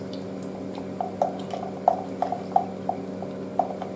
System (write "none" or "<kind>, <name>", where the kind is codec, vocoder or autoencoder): none